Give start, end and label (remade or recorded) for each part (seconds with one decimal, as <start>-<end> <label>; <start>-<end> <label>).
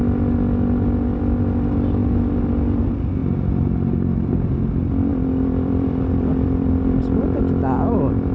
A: 0.0-5.1 recorded; 5.1-7.4 remade; 7.4-8.3 recorded